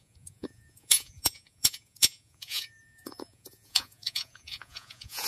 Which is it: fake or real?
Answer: fake